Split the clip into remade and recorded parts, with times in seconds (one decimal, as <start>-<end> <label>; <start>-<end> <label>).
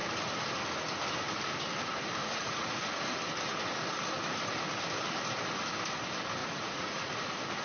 0.0-2.2 recorded; 2.2-2.8 remade; 2.8-6.4 recorded; 6.4-7.1 remade; 7.1-7.6 recorded